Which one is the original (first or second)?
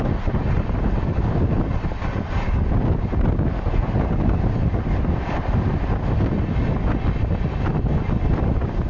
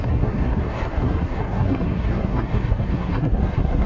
first